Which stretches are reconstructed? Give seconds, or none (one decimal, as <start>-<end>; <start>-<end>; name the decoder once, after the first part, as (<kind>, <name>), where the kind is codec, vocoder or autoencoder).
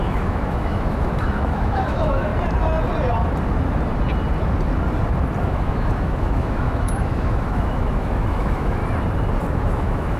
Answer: 0.0-2.3 (autoencoder, DAC-VAE); 5.4-8.8; 9.5-10.2